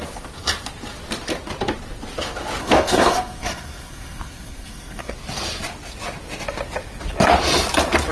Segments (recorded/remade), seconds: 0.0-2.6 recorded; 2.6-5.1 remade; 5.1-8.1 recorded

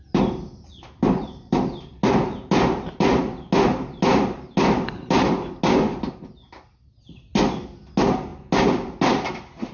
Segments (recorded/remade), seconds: 0.0-9.7 recorded

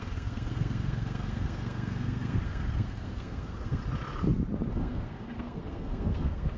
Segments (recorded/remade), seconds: 0.0-3.8 remade; 3.8-4.7 recorded; 4.7-6.6 remade

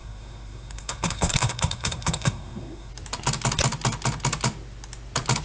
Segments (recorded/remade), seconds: 0.0-2.9 remade; 2.9-5.4 recorded

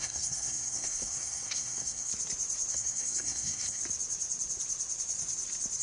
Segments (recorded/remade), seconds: 0.0-2.1 remade; 2.1-2.7 recorded; 2.7-3.8 remade; 3.8-5.8 recorded